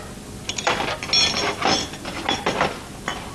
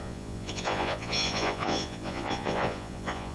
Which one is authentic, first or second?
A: first